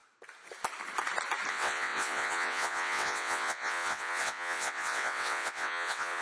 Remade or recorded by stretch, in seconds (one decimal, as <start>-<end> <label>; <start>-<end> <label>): 0.0-1.5 recorded; 1.5-6.2 remade